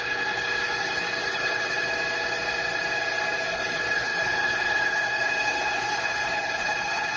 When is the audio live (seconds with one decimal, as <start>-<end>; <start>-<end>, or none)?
1.9-3.5